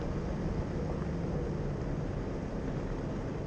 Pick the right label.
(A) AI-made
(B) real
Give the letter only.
B